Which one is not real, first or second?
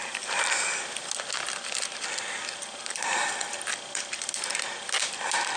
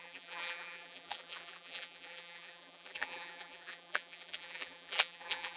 second